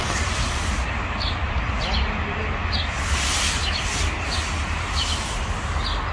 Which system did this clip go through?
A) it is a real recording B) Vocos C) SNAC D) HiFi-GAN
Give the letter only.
A